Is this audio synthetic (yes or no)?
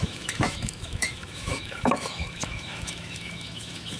yes